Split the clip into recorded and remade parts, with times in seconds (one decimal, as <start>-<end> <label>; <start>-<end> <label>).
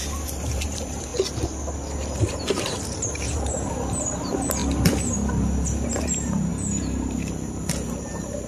0.0-1.1 remade; 1.1-2.1 recorded; 2.1-4.6 remade; 4.6-6.0 recorded; 6.0-8.5 remade